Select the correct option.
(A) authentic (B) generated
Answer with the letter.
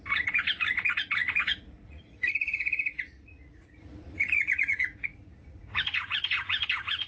B